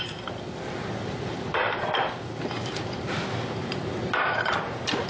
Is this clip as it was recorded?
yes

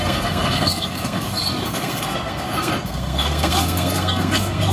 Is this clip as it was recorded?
no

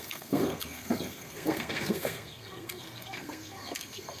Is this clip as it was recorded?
no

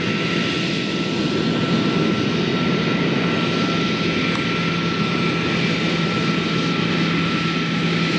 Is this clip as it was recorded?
yes